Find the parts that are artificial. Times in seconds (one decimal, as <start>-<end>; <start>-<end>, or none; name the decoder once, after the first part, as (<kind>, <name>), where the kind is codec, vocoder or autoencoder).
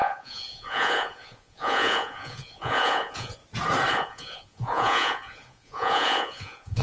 0.0-3.4 (vocoder, Vocos); 3.9-6.8